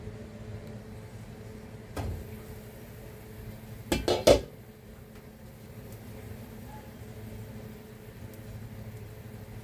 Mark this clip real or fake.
real